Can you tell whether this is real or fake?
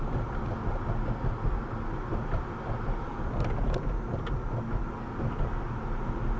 real